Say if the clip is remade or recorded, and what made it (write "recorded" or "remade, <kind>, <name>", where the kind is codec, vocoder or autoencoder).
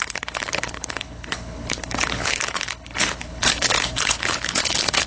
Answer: remade, codec, HILCodec